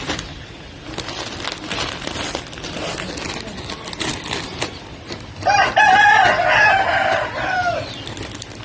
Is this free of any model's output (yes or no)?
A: yes